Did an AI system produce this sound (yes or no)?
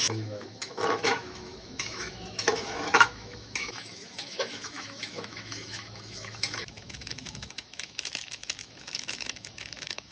yes